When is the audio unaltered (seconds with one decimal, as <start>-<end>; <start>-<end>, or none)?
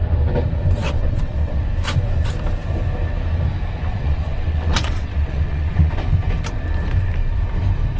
0.0-0.8; 1.6-3.9; 5.9-8.0